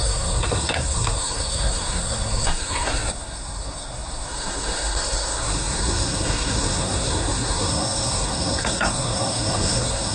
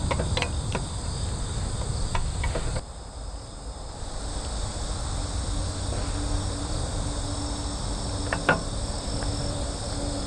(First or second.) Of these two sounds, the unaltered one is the second